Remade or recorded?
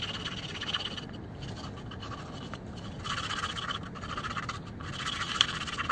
recorded